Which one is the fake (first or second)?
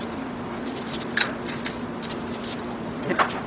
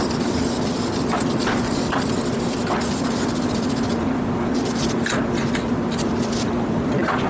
second